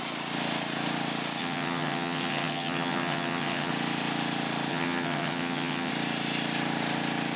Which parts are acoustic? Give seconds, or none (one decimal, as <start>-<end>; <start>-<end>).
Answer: 0.0-1.4; 3.7-4.7; 5.9-7.4